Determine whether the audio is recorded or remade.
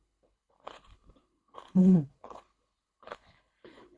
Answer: remade